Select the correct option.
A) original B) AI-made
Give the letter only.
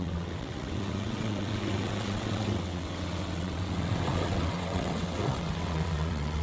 B